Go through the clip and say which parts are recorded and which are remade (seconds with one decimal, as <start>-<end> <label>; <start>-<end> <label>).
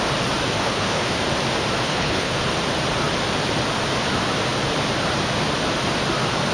0.0-0.6 recorded; 0.6-1.1 remade; 1.1-1.8 recorded; 1.8-2.4 remade; 2.4-6.5 recorded